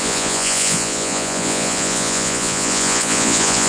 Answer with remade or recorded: remade